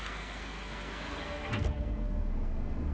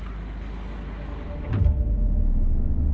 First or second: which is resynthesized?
first